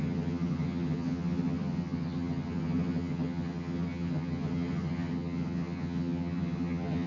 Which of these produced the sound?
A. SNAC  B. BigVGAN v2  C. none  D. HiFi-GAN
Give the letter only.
D